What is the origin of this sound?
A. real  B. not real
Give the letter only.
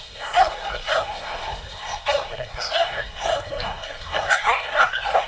B